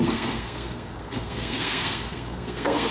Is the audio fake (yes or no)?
yes